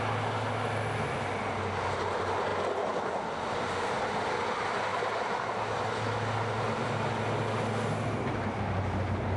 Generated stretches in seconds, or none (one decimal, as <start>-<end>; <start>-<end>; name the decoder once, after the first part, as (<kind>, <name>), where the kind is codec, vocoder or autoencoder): none

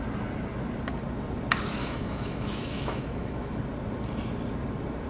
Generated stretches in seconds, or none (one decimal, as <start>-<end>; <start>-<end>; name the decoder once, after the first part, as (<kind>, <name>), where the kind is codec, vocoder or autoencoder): 1.8-3.6 (autoencoder, DAC-VAE)